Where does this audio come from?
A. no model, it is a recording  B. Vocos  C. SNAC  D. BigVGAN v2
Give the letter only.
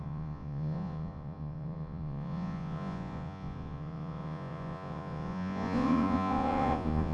B